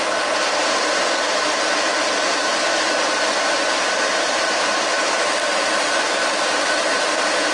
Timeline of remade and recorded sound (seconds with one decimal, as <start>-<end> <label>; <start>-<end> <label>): 0.0-0.6 recorded; 0.6-2.8 remade; 2.8-3.8 recorded; 3.8-7.1 remade; 7.1-7.5 recorded